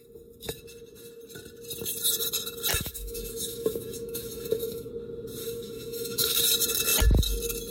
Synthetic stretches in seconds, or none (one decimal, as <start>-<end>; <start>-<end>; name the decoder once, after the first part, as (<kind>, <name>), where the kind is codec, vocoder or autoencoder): 2.7-4.9 (autoencoder, DAC-VAE); 5.4-6.4